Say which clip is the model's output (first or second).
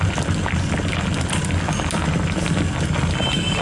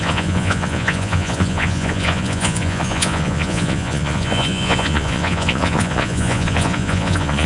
second